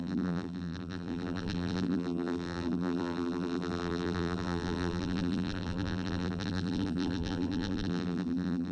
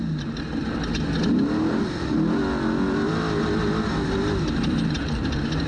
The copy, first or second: first